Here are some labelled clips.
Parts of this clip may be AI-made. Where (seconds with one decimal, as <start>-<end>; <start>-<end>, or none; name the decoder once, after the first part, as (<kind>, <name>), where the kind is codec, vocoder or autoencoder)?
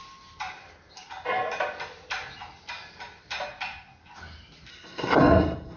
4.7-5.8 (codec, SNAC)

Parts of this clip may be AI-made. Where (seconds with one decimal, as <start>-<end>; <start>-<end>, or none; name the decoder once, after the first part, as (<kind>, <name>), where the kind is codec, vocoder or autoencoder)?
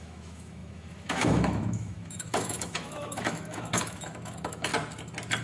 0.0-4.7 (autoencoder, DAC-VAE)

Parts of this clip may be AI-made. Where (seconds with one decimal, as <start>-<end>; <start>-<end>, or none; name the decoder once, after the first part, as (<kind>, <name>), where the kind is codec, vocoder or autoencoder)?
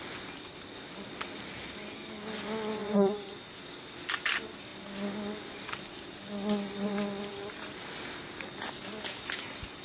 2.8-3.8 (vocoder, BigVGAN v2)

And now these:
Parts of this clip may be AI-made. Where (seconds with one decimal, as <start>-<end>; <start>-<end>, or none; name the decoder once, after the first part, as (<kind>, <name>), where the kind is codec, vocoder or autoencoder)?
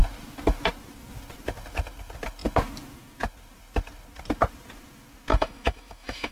5.3-6.3 (autoencoder, DAC-VAE)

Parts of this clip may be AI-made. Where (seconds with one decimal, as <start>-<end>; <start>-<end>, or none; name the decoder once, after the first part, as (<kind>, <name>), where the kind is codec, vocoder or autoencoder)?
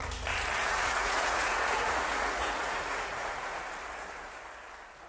0.6-3.7 (vocoder, Vocos)